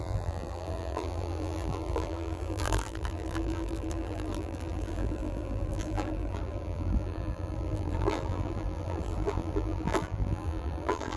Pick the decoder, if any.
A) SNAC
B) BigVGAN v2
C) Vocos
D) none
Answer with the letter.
B